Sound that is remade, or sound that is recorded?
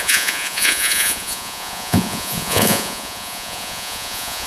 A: remade